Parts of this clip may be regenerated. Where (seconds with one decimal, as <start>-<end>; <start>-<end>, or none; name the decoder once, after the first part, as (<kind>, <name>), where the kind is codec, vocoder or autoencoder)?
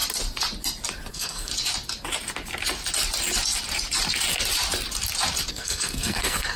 1.1-1.5 (codec, SNAC); 5.5-6.6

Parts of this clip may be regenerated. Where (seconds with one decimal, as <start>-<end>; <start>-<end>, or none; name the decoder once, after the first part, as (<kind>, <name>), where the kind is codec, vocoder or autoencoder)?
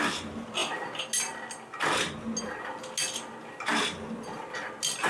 none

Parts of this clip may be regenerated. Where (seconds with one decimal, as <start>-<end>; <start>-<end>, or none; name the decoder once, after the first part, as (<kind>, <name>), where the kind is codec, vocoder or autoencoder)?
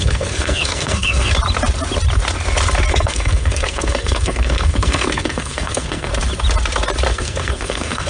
0.0-1.3 (codec, SNAC); 2.9-6.1; 7.1-8.1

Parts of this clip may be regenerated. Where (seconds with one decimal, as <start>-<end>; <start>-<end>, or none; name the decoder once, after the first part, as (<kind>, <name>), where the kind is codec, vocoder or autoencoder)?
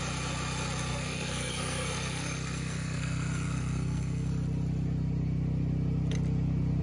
0.9-4.3 (codec, SNAC)